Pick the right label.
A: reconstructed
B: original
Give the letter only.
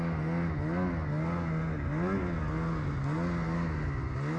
B